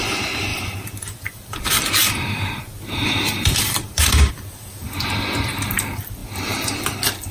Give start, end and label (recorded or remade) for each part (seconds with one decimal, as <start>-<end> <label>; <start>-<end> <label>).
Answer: 0.0-0.5 recorded; 0.5-4.3 remade; 4.3-7.3 recorded